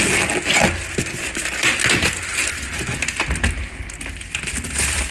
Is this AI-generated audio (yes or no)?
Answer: no